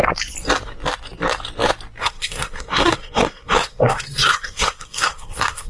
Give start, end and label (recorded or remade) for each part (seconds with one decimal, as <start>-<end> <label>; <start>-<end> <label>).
0.0-2.0 recorded; 2.0-5.7 remade